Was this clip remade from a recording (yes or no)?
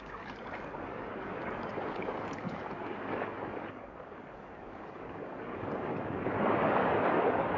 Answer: yes